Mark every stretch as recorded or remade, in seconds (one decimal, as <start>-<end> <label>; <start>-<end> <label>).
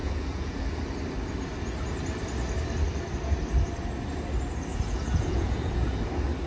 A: 0.0-0.6 remade; 0.6-4.7 recorded; 4.7-6.0 remade; 6.0-6.5 recorded